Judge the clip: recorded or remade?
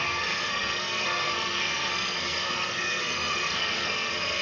remade